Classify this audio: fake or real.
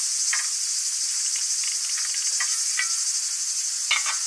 real